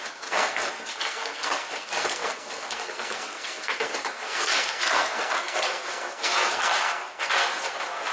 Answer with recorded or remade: remade